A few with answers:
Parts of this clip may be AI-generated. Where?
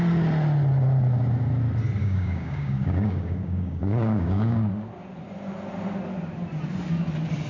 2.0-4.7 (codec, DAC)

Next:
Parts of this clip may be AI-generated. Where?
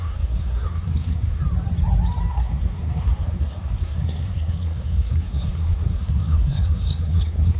0.0-1.4 (codec, SNAC); 2.3-7.6